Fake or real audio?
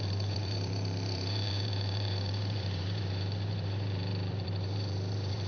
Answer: fake